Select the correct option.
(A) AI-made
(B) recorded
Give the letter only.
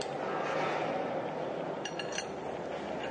B